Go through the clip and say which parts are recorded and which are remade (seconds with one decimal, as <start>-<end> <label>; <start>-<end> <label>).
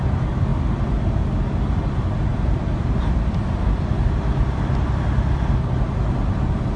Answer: 0.0-6.8 recorded